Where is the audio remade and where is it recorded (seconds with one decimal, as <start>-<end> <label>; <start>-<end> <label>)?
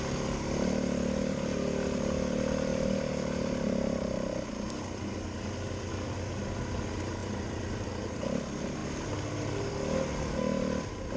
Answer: 0.0-2.7 recorded; 2.7-4.5 remade; 4.5-7.2 recorded; 7.2-7.9 remade; 7.9-11.2 recorded